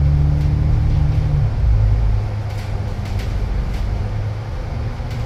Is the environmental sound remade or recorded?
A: recorded